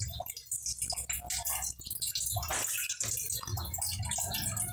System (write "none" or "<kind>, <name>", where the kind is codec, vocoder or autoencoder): none